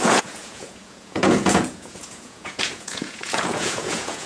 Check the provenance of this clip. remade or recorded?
remade